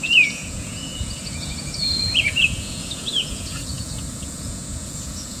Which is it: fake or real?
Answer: fake